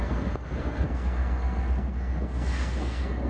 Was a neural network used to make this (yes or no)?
yes